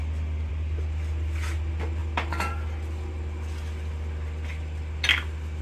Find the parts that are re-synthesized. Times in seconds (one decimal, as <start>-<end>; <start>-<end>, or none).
none

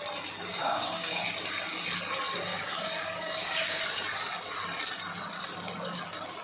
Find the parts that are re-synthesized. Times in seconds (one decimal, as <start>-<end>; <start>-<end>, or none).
0.5-1.2; 2.5-3.8

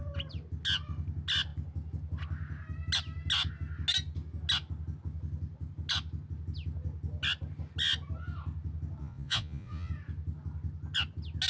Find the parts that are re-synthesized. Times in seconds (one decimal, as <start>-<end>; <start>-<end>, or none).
9.0-9.9

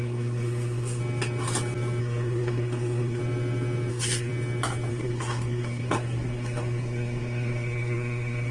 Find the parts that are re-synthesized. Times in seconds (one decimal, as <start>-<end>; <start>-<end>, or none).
0.0-1.0; 2.0-3.2; 3.9-4.3; 4.9-8.5

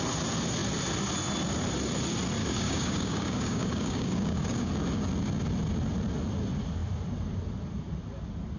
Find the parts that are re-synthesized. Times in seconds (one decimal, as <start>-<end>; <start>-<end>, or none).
2.4-4.7

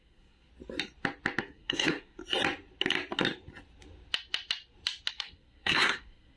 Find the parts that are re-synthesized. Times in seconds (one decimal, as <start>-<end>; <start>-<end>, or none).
0.0-0.5; 1.4-2.2; 5.1-6.4